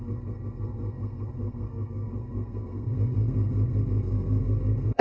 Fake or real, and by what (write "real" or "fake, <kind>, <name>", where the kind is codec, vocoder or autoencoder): fake, codec, SNAC